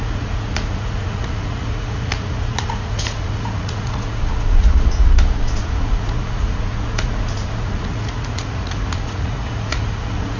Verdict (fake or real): fake